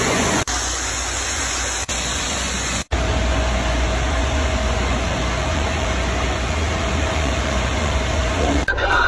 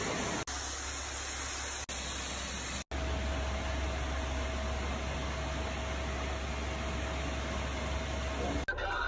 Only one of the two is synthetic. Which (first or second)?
first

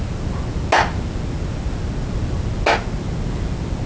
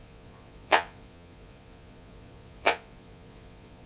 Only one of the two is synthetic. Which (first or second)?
second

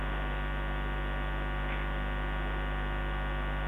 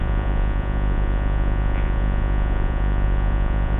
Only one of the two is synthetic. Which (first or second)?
second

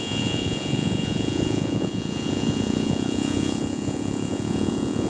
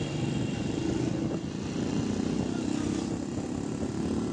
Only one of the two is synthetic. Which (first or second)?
first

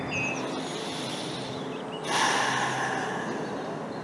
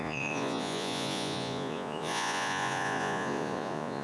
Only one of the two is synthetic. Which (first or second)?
second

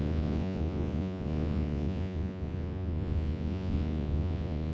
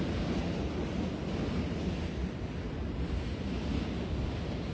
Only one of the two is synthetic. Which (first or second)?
first